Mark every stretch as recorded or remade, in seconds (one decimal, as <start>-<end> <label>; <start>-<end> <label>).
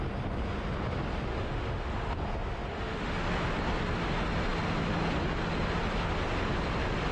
0.0-1.3 recorded; 1.3-2.2 remade; 2.2-2.7 recorded; 2.7-3.2 remade; 3.2-7.1 recorded